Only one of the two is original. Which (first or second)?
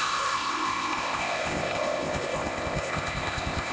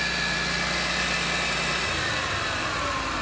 second